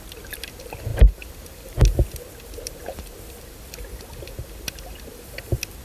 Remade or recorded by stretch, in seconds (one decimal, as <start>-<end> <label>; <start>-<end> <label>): 0.0-5.8 recorded